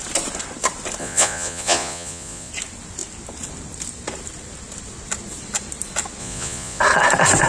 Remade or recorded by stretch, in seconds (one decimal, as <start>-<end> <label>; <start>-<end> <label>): 0.0-1.0 recorded; 1.0-2.5 remade; 2.5-6.2 recorded; 6.2-6.8 remade; 6.8-7.5 recorded